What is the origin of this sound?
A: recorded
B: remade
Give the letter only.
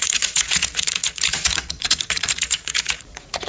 B